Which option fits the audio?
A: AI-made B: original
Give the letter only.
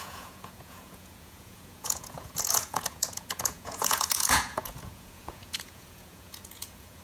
A